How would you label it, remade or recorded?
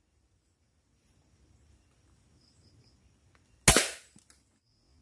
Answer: recorded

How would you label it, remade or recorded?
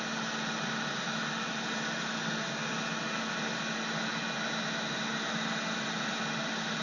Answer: recorded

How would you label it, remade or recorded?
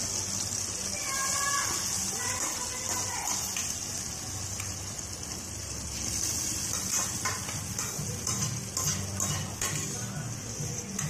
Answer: recorded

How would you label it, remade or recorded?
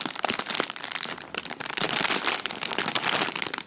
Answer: remade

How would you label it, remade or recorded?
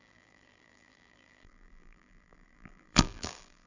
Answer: remade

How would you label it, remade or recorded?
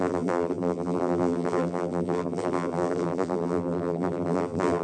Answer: remade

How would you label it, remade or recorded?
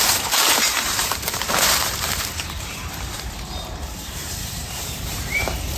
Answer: remade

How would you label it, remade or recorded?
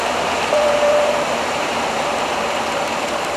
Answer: remade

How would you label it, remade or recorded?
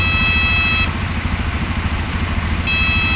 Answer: recorded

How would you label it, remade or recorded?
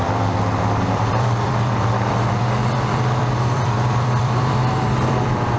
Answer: remade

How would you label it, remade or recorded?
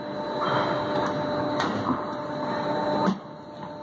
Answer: recorded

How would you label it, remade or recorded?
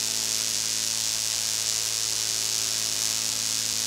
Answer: recorded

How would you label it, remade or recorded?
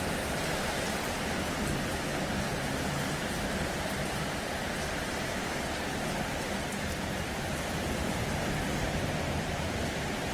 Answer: remade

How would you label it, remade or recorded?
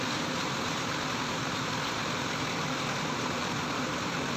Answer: remade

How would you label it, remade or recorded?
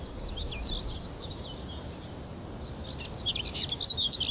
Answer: recorded